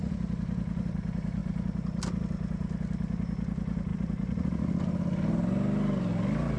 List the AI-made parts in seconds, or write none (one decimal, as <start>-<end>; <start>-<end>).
1.4-2.2; 3.9-4.6